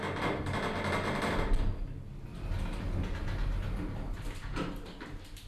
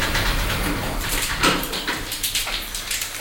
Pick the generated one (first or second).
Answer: second